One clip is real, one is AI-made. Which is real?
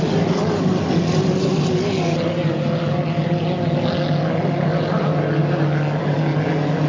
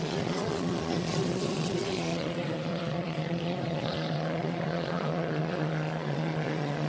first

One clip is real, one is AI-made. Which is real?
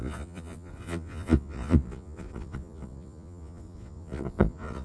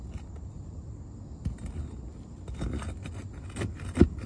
second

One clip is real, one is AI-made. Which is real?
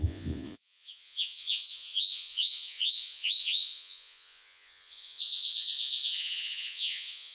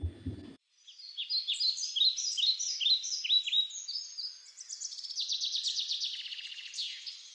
second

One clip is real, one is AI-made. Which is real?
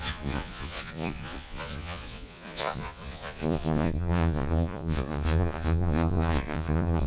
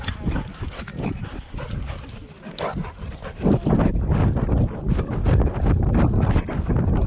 second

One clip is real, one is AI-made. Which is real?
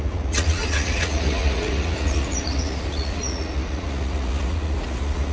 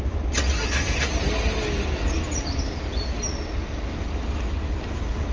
second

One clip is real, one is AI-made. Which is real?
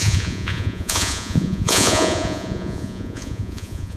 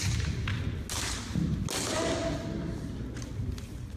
second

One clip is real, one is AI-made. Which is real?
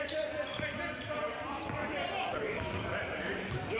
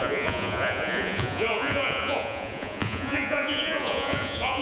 first